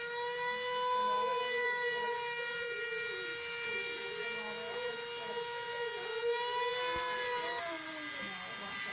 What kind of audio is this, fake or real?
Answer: real